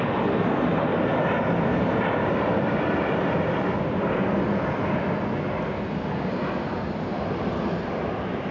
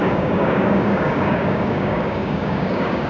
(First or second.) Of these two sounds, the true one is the first